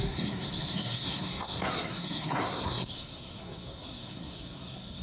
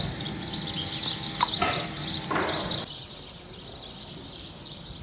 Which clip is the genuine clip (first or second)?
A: second